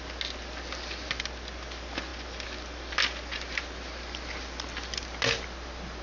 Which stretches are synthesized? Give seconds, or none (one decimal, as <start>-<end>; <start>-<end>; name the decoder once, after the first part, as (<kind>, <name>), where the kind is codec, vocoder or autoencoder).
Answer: none